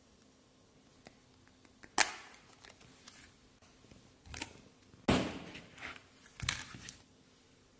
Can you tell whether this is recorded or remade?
recorded